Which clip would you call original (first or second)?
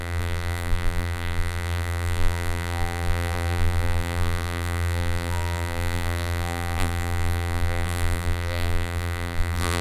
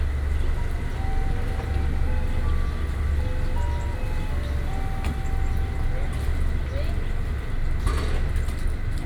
second